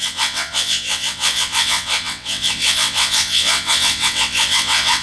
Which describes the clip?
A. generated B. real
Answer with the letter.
A